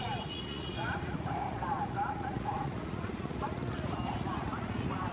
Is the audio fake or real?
fake